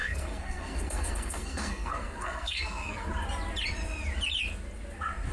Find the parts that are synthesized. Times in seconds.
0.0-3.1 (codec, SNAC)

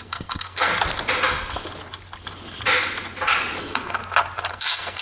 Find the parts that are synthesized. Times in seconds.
0.0-0.7 (codec, SNAC); 3.6-4.0; 4.5-5.0

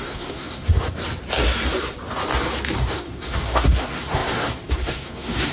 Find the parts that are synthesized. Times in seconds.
0.0-1.0 (codec, SNAC); 2.8-5.5

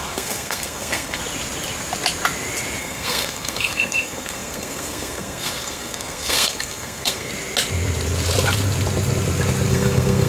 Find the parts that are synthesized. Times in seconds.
0.0-1.2 (codec, SNAC); 2.8-7.3; 9.7-10.3

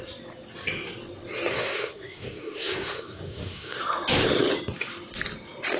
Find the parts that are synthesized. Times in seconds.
1.5-3.8 (codec, SNAC)

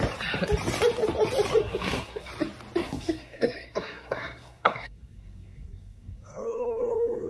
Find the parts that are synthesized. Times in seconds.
1.6-2.3 (codec, SNAC); 2.8-7.3